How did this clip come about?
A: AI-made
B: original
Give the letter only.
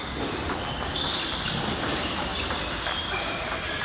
B